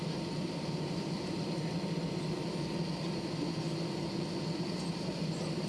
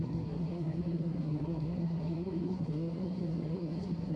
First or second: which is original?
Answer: first